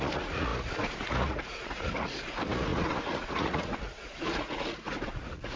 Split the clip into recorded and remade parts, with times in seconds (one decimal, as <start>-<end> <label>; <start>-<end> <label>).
0.0-5.6 remade